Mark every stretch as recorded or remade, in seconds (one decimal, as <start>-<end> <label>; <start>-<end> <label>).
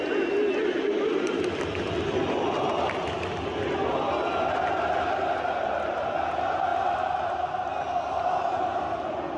0.0-9.4 recorded